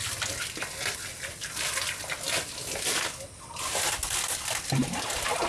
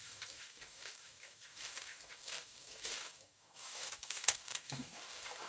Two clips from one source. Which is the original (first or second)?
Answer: first